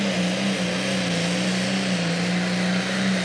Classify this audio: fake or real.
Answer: real